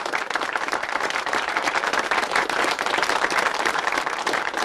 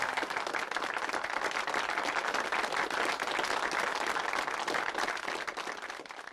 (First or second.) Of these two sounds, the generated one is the first